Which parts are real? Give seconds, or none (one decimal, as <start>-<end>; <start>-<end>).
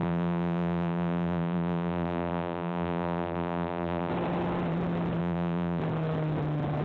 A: 4.1-5.2; 5.8-6.8